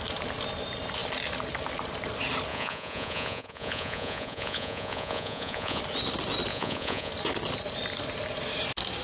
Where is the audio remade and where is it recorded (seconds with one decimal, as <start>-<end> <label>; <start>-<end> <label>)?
0.0-2.5 recorded; 2.5-5.8 remade; 5.8-6.5 recorded; 6.5-7.1 remade; 7.1-9.0 recorded